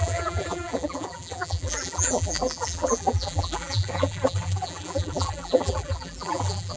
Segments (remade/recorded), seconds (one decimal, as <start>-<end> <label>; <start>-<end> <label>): 0.0-6.8 remade